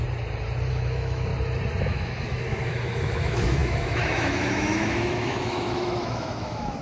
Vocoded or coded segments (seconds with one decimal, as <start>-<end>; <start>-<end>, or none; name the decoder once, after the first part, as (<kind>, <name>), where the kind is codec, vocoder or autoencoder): 0.7-1.3 (autoencoder, DAC-VAE); 1.8-6.8